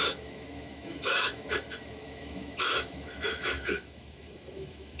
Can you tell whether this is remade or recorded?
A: remade